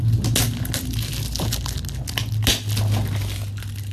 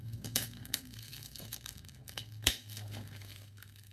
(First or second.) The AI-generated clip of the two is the second